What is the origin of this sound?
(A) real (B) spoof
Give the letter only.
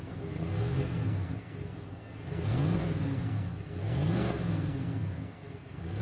B